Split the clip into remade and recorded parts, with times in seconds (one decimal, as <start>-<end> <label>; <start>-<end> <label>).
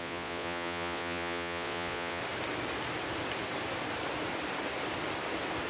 0.0-2.2 remade; 2.2-5.7 recorded